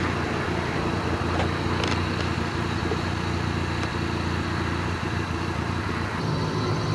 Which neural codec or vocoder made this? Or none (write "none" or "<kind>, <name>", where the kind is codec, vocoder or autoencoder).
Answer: none